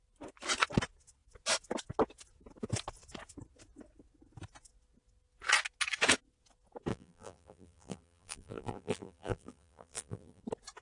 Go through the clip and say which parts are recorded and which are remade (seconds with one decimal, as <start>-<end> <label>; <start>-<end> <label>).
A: 0.0-6.9 recorded; 6.9-10.4 remade; 10.4-10.8 recorded

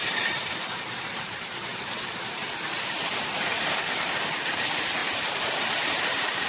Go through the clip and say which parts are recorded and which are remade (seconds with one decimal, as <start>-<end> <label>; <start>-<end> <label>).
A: 0.0-6.5 remade